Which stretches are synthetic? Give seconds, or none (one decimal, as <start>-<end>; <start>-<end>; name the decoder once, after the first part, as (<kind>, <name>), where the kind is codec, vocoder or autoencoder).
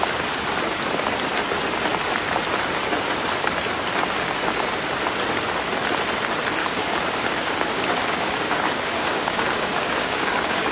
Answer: 6.6-10.7 (codec, DAC)